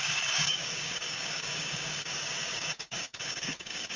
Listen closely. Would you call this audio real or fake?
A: fake